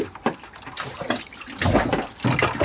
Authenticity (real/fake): real